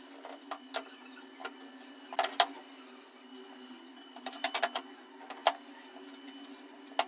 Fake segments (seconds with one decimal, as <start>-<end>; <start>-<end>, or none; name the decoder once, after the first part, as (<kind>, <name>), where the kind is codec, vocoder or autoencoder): none